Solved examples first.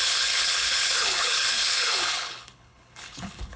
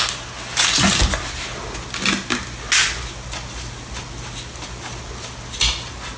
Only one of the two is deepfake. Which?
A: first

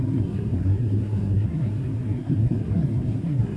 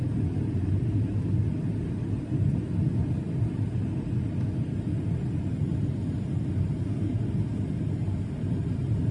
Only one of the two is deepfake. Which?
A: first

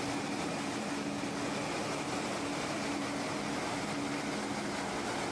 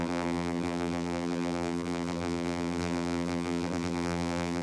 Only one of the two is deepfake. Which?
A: second